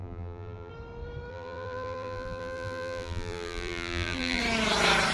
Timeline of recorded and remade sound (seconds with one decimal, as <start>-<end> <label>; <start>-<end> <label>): 0.0-0.7 remade; 0.7-1.3 recorded; 1.3-4.4 remade; 4.4-5.1 recorded